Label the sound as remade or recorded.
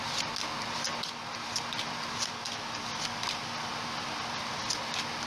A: recorded